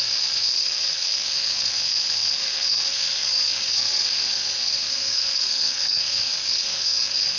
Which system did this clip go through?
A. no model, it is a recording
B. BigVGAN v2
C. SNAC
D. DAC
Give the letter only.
C